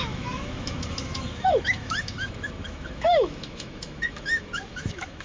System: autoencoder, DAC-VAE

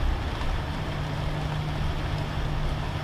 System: none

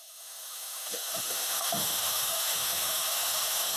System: autoencoder, DAC-VAE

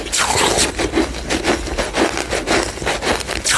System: none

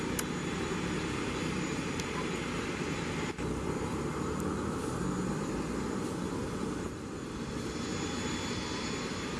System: none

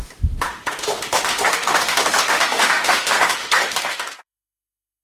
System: autoencoder, DAC-VAE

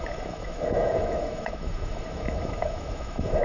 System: autoencoder, DAC-VAE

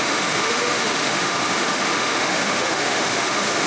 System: autoencoder, DAC-VAE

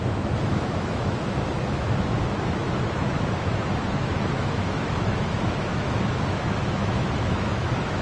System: autoencoder, DAC-VAE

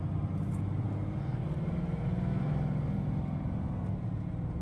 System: none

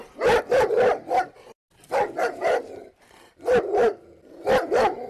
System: none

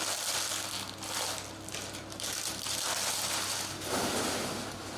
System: none